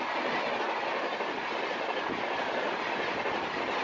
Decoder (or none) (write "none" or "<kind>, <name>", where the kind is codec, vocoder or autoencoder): none